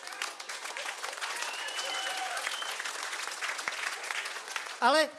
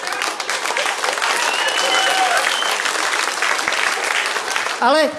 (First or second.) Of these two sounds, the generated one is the first